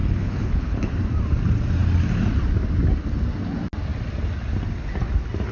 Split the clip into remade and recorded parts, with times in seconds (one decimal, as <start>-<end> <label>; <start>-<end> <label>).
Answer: 0.0-0.9 remade; 0.9-5.5 recorded